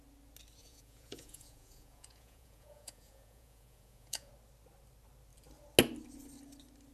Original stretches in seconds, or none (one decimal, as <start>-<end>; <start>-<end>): 0.0-0.6; 4.3-6.9